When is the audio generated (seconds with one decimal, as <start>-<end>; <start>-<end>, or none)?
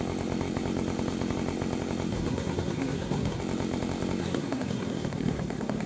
2.1-3.4; 4.2-5.9